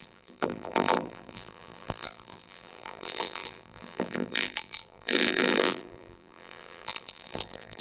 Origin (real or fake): fake